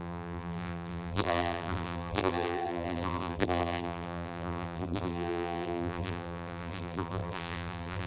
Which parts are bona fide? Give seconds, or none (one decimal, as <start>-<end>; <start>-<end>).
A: none